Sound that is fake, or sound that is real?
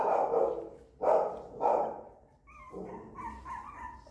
real